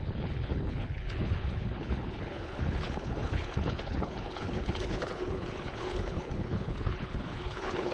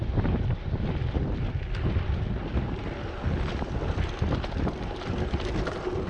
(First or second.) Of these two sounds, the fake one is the first